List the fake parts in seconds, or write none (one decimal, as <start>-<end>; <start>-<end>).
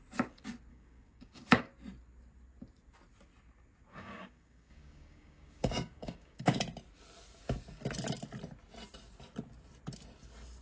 0.7-1.7; 3.9-6.5